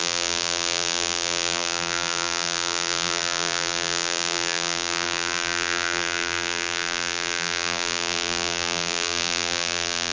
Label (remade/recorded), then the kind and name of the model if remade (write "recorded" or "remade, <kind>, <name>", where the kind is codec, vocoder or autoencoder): remade, vocoder, BigVGAN v2